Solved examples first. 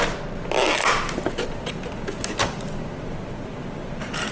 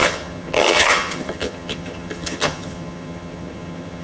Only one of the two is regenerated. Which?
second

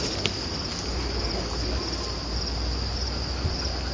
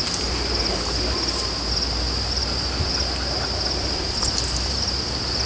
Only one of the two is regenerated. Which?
first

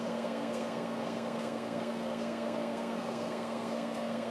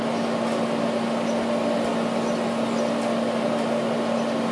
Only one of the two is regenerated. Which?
first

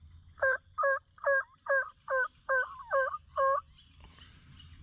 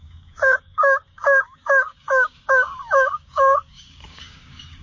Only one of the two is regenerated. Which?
second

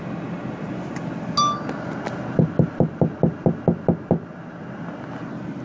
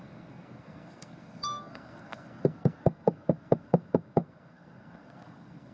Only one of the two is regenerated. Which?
second